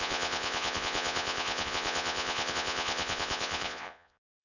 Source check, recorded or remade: remade